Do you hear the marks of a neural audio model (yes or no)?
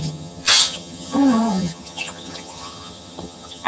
yes